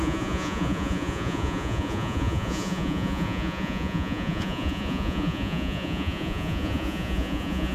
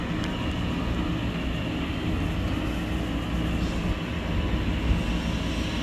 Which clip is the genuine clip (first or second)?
second